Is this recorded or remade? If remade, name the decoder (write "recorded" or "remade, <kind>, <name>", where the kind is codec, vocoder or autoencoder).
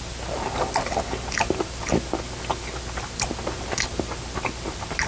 recorded